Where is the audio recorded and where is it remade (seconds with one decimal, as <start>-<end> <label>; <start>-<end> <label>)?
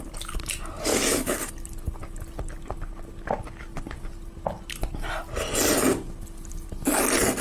0.0-0.9 recorded; 0.9-1.5 remade; 1.5-7.4 recorded